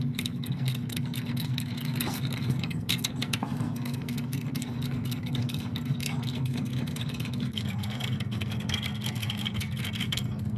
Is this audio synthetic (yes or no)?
yes